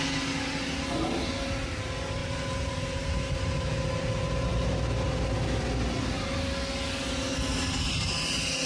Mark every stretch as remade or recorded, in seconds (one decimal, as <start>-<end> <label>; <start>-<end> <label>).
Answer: 0.0-2.2 recorded; 2.2-3.9 remade; 3.9-8.7 recorded

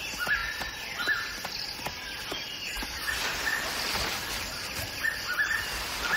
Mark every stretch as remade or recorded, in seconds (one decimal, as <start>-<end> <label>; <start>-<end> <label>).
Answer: 0.0-0.4 recorded; 0.4-3.1 remade; 3.1-3.5 recorded; 3.5-4.9 remade; 4.9-6.2 recorded

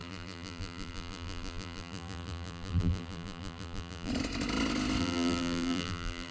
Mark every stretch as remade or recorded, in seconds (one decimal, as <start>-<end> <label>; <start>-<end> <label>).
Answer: 0.0-4.1 remade; 4.1-5.0 recorded; 5.0-6.3 remade